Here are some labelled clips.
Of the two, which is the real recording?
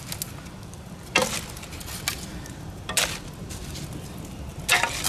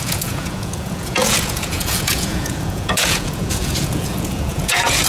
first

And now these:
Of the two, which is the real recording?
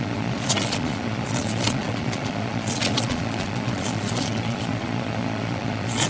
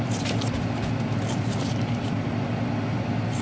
second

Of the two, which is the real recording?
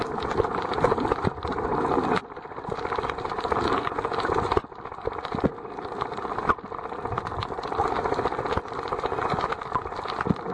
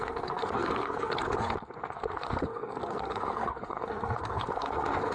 first